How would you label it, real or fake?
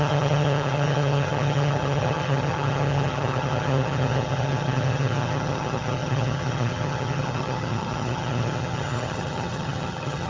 fake